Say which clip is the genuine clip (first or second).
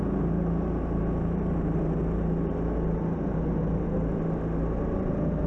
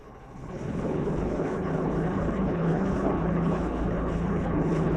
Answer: first